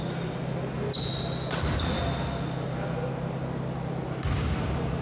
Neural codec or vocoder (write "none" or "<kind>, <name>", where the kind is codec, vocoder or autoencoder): none